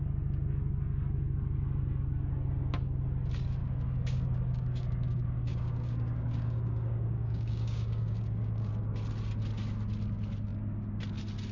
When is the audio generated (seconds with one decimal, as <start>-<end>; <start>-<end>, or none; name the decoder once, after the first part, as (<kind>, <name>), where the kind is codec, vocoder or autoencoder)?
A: 3.6-8.7 (codec, DAC)